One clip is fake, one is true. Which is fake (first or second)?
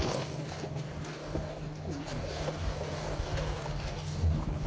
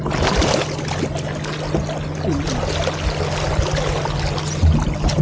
first